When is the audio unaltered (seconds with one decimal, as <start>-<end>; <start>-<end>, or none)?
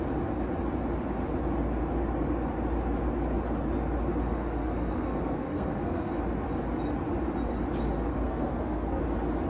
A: 0.0-4.2; 6.1-8.1; 9.0-9.5